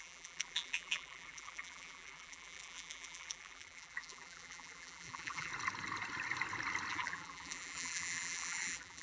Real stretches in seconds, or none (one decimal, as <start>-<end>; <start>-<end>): 5.5-6.9